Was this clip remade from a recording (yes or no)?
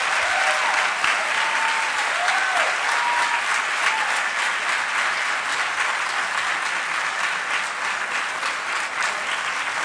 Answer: no